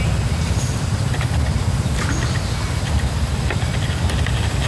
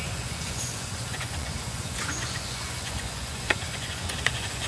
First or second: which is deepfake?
second